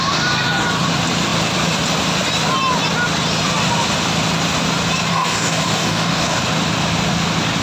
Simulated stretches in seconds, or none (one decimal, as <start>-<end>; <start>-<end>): 5.1-6.4